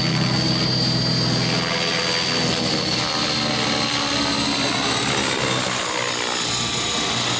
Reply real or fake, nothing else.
real